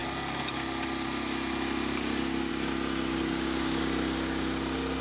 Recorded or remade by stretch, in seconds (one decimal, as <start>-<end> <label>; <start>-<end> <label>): 0.0-3.1 recorded; 3.1-3.8 remade; 3.8-5.0 recorded